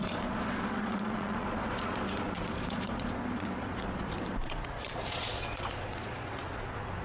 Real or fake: fake